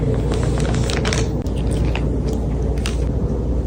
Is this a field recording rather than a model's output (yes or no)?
yes